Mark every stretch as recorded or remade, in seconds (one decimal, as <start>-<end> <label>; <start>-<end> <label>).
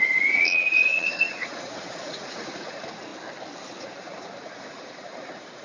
0.0-3.1 remade; 3.1-3.8 recorded; 3.8-5.6 remade